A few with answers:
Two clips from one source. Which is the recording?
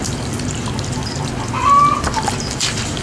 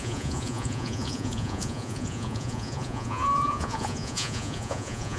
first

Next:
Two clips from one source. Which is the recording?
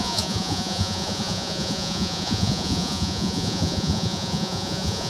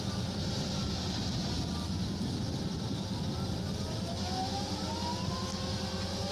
second